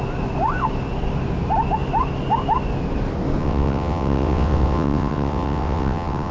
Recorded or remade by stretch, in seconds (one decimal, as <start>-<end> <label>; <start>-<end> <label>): 0.0-3.4 recorded; 3.4-6.3 remade